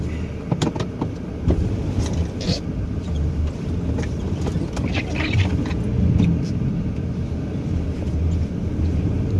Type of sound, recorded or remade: recorded